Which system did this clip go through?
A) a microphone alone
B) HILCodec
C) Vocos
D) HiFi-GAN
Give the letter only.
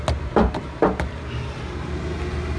A